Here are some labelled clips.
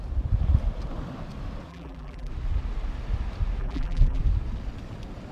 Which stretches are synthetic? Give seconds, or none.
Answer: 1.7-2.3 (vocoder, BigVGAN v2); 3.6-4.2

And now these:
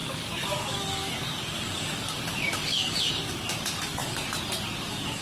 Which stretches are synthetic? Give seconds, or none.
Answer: 0.0-4.0 (codec, DAC); 4.8-5.2

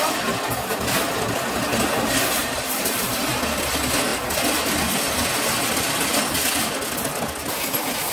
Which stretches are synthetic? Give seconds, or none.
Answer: 2.4-3.3 (vocoder, BigVGAN v2)

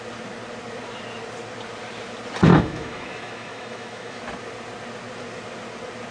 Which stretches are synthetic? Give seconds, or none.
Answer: 2.5-4.2 (autoencoder, DAC-VAE)

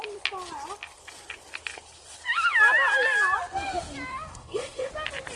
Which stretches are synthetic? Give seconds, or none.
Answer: 4.3-4.9 (codec, SNAC)

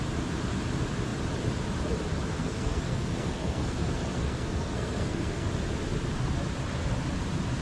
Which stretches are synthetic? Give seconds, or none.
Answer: 2.3-5.5 (codec, SNAC)